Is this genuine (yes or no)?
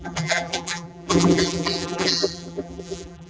no